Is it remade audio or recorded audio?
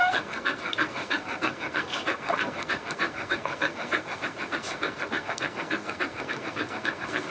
remade